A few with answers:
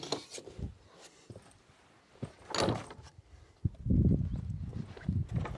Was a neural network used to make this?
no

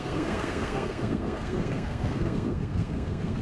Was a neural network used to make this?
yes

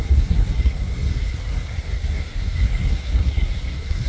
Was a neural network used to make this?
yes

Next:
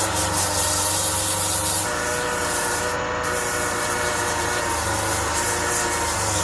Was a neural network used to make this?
no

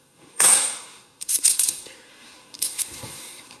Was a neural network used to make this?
yes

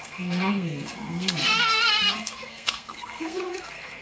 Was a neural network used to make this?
yes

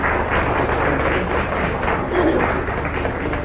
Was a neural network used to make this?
no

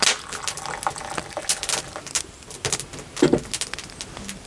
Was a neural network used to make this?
no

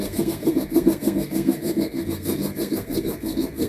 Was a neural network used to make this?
yes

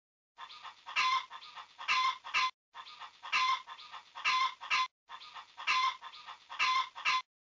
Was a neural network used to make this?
no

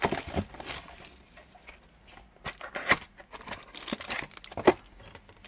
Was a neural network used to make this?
no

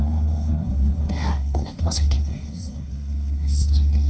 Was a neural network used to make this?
yes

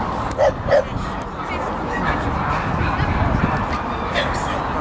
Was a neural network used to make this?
no